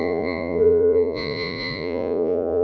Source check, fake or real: fake